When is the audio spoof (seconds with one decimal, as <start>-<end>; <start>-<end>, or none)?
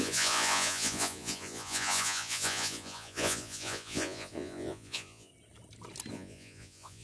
0.0-5.3; 6.1-7.0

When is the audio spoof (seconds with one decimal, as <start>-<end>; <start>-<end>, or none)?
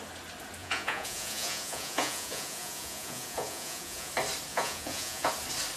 0.6-4.1; 4.5-5.3